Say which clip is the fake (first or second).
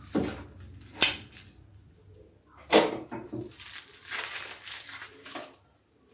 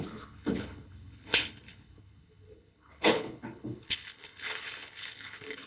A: second